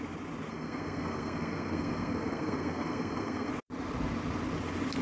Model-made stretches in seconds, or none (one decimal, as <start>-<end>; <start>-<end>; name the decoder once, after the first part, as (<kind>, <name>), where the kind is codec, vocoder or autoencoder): 0.5-3.5 (codec, SNAC)